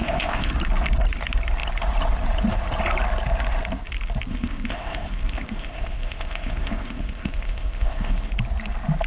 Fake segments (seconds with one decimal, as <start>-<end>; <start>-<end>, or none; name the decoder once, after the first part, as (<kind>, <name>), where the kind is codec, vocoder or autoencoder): 0.0-0.5 (codec, ZipCodec); 4.3-8.3